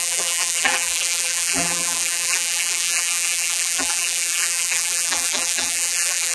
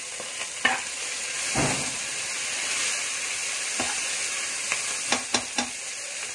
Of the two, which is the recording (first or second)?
second